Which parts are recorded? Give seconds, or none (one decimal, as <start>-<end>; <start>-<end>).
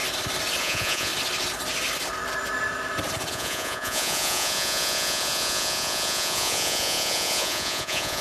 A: 0.0-0.6; 1.1-3.3